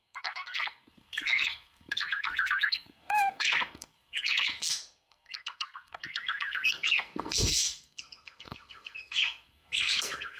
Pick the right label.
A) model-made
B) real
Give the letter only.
A